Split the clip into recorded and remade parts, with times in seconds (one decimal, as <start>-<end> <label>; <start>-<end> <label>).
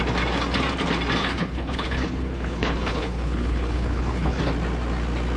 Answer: 0.0-1.2 recorded; 1.2-4.4 remade; 4.4-5.4 recorded